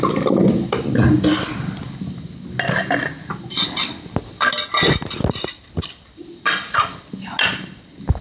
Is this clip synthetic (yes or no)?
no